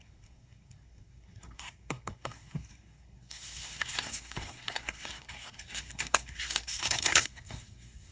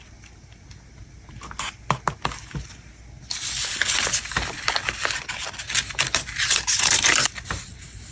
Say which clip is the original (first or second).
second